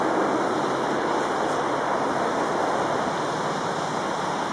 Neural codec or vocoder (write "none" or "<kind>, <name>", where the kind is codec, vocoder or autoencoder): none